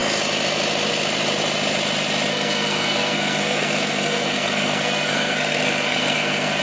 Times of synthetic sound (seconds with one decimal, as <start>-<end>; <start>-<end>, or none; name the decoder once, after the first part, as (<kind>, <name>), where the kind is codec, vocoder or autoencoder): 2.3-6.6 (codec, SNAC)